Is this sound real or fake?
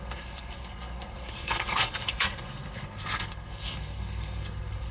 fake